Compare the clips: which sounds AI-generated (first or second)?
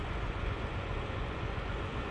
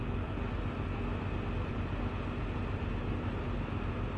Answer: first